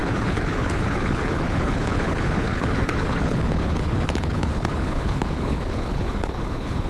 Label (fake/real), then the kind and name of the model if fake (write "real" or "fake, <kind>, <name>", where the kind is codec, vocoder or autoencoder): fake, codec, HILCodec